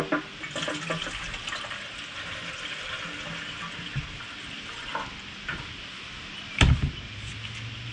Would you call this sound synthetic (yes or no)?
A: no